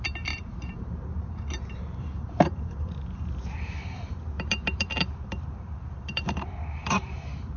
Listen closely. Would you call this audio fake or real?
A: fake